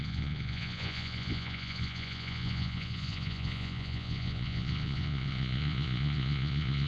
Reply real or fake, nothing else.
fake